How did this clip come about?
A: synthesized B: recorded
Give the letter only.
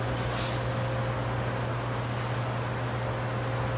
B